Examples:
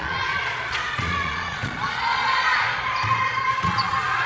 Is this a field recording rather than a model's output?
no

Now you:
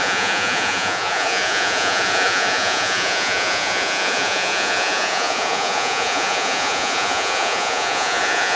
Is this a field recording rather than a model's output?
no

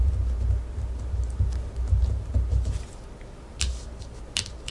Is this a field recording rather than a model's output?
yes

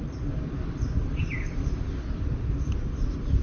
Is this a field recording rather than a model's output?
yes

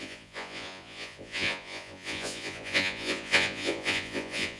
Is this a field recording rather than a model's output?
no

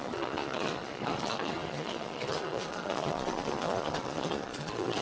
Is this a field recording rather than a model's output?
no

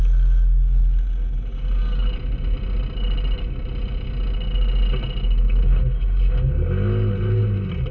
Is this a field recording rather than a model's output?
yes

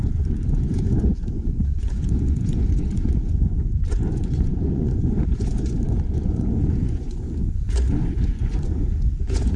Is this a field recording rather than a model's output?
no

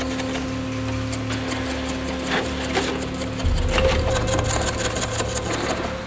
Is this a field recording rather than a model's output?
yes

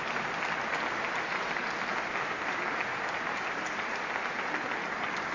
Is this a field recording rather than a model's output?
yes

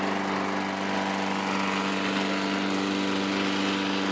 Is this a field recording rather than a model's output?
yes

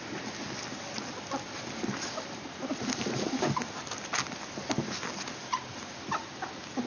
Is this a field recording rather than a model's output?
yes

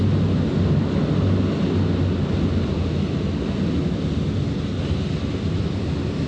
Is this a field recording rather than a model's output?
yes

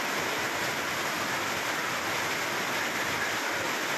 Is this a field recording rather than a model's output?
yes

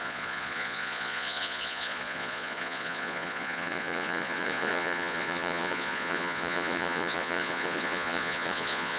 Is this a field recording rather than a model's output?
no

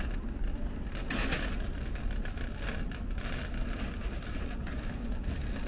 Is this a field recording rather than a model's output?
yes